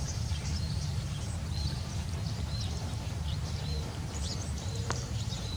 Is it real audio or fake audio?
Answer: fake